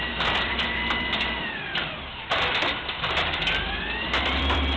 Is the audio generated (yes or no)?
yes